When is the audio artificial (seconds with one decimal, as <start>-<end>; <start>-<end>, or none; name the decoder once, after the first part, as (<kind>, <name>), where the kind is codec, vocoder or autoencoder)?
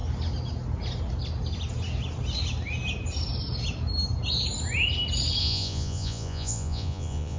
5.4-7.4 (vocoder, Vocos)